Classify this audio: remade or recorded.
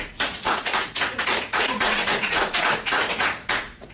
remade